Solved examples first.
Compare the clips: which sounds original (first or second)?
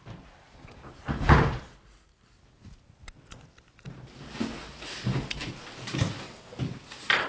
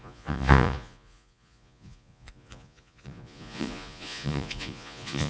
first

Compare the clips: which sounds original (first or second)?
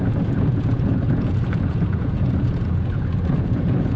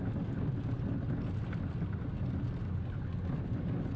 second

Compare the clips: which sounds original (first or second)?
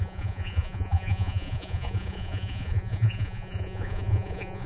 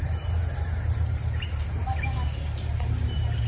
second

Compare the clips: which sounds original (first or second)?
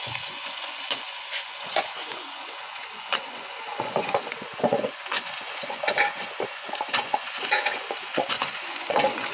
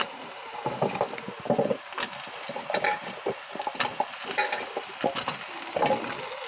second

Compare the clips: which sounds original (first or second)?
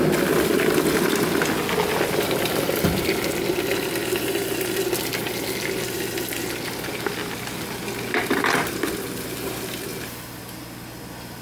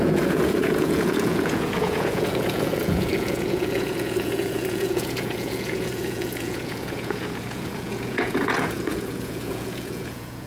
first